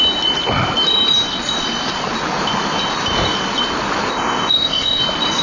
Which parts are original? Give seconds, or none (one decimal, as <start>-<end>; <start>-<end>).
0.0-4.1; 5.0-5.4